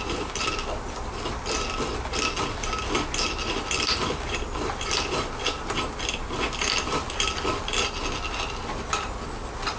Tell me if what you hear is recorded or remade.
recorded